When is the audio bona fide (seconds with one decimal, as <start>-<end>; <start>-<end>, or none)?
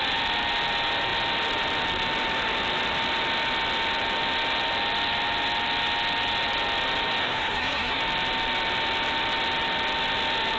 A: 0.0-7.2; 8.0-10.6